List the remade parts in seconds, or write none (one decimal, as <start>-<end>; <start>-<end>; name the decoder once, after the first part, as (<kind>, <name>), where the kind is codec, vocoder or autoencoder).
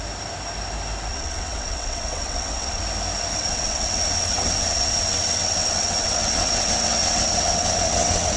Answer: 1.1-2.8 (vocoder, WaveNeXt); 3.3-8.4